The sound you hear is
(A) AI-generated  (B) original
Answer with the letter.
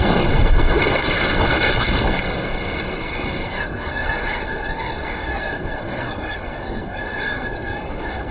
A